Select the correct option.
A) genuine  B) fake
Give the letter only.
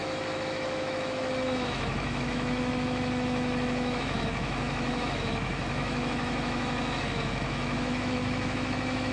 B